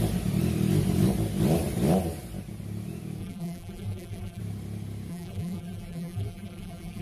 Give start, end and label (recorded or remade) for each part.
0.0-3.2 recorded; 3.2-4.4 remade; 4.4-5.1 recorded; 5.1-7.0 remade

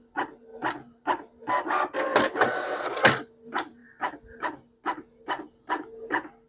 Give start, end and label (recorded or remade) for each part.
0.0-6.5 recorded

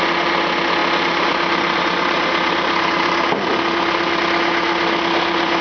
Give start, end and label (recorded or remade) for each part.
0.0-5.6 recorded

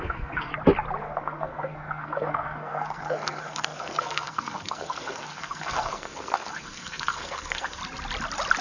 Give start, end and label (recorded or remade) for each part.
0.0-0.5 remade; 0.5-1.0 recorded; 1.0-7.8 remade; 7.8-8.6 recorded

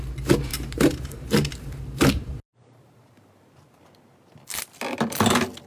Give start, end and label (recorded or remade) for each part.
0.0-0.5 recorded; 0.5-3.9 remade; 3.9-5.7 recorded

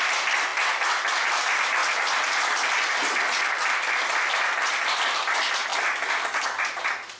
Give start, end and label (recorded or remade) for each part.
0.0-7.2 recorded

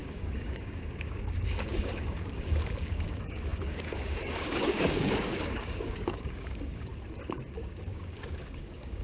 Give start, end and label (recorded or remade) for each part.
0.0-6.9 remade; 6.9-7.5 recorded; 7.5-9.0 remade